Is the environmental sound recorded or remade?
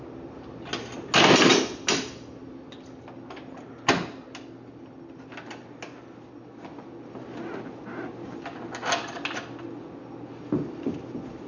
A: recorded